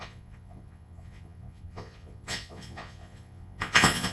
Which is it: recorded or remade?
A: remade